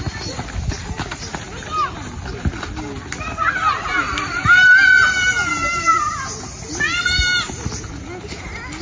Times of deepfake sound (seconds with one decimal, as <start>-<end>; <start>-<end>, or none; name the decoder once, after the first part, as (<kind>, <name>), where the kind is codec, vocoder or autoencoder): none